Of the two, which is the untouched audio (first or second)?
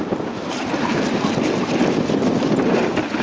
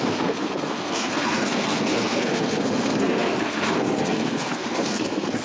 first